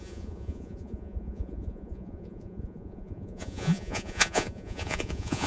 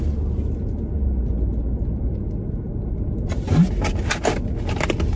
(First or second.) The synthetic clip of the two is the first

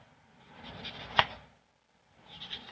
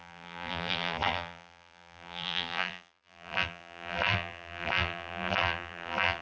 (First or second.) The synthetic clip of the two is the second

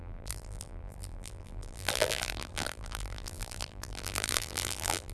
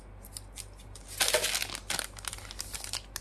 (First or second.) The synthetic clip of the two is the first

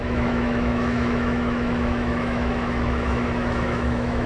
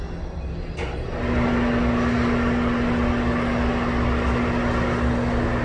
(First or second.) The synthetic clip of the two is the first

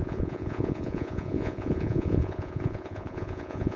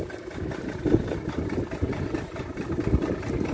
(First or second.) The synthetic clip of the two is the first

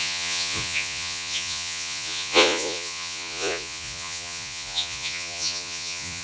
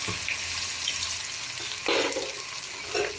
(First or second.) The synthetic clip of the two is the first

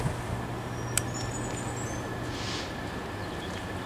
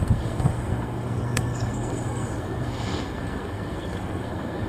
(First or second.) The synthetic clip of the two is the second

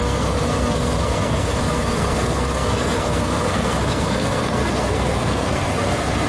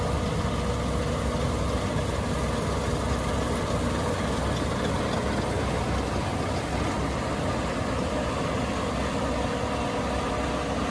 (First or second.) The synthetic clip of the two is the first